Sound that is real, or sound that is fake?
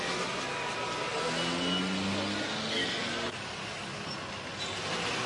real